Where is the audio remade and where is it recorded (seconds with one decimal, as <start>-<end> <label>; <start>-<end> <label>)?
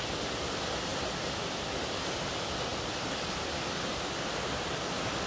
0.0-5.3 recorded